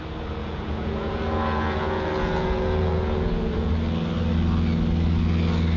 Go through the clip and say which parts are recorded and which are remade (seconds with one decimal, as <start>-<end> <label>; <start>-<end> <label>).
0.0-0.4 recorded; 0.4-3.7 remade; 3.7-5.8 recorded